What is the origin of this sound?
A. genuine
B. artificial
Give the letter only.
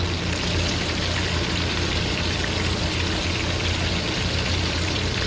A